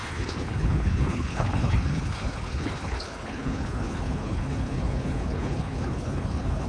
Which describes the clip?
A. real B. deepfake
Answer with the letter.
B